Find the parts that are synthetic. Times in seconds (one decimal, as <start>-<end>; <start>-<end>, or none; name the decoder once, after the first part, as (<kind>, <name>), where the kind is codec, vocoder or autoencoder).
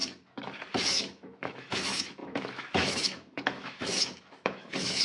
0.8-5.0 (autoencoder, DAC-VAE)